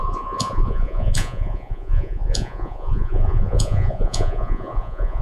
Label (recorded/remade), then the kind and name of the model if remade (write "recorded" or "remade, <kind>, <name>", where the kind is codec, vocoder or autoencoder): remade, vocoder, Vocos